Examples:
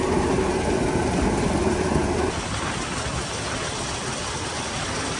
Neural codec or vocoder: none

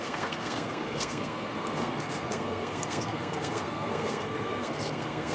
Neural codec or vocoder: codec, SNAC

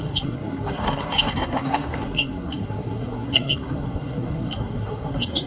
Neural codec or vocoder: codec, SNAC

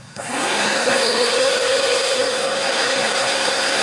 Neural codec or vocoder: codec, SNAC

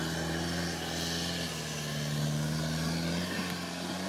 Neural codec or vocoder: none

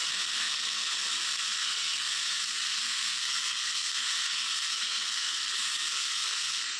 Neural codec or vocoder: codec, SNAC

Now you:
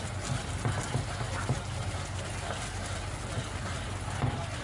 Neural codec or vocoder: none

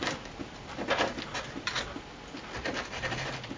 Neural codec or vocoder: none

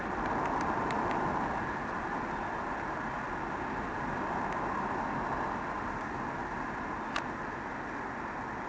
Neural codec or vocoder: none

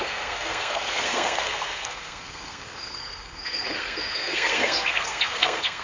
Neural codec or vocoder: codec, SNAC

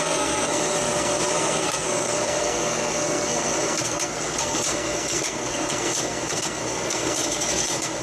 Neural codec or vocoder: codec, SNAC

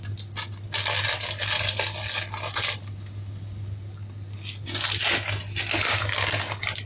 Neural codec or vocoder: none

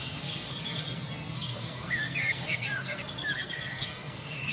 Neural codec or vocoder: codec, SNAC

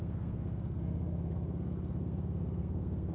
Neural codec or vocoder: codec, SNAC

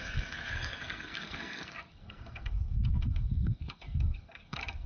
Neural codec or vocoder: codec, SNAC